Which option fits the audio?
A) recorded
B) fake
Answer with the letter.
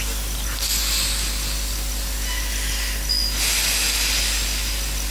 A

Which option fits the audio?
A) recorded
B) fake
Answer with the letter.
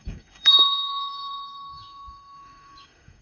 B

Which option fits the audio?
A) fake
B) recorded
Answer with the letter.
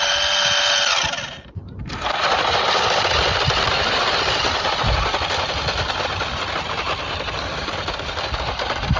B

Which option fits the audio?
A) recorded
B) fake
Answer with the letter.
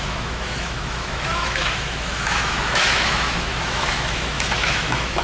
B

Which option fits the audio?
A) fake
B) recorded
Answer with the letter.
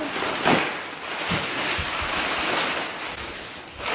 B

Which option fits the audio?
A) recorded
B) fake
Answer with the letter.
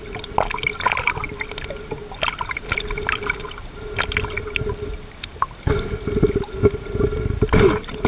A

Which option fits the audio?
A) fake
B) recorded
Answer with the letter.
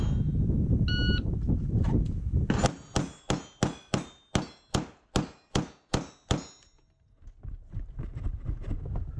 B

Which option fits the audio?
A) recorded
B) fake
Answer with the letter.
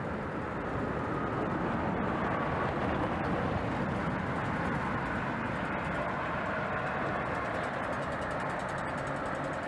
A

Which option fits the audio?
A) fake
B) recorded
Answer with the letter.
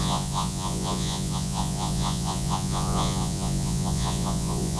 A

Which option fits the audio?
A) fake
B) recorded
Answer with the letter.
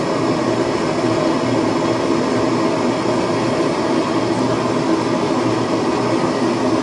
B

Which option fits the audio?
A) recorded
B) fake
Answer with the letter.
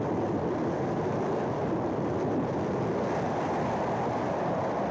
A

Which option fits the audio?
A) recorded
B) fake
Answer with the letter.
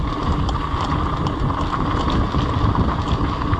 A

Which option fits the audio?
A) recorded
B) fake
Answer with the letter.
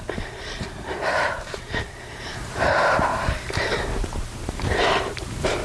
B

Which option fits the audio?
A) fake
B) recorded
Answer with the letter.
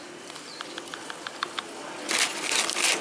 B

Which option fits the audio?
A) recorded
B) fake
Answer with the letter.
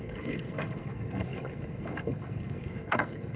B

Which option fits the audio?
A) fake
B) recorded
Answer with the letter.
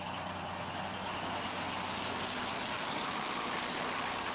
B